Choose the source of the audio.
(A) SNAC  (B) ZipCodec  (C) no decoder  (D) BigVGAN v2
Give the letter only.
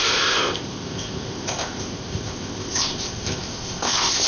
B